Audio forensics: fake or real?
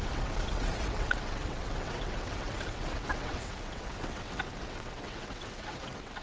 fake